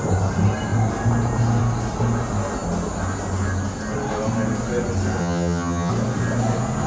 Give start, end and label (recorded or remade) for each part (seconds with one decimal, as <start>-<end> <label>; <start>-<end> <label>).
0.0-5.2 recorded; 5.2-5.9 remade; 5.9-6.9 recorded